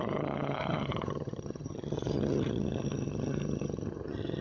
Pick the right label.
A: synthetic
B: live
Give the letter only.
A